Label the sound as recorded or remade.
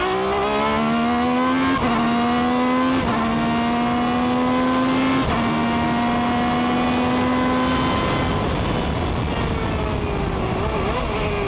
recorded